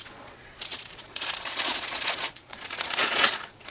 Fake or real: fake